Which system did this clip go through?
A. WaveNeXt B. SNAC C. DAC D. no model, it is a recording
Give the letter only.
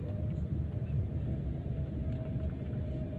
D